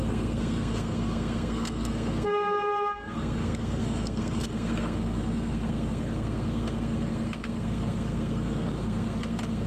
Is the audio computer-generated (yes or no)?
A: yes